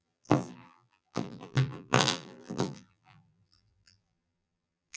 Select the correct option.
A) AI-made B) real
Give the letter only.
A